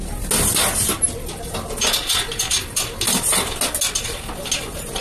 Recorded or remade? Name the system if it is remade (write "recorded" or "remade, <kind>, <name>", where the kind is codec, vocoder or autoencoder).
recorded